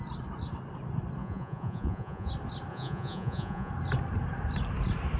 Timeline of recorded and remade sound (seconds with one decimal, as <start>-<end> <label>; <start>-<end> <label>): 0.0-1.2 recorded; 1.2-2.3 remade; 2.3-2.7 recorded; 2.7-3.7 remade; 3.7-5.2 recorded